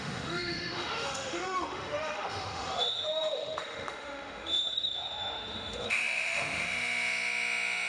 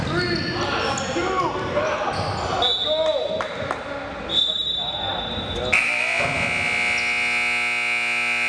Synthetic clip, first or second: first